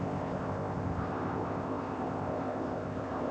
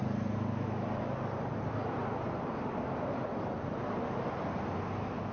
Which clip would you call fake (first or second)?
first